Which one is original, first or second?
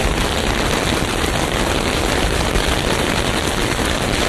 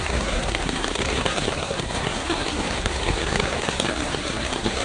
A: first